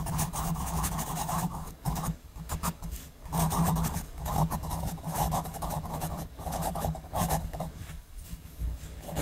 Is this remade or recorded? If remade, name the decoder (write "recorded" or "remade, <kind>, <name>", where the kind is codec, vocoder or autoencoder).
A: remade, codec, DAC